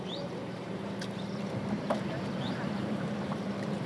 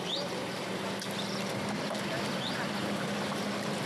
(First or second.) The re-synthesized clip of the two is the first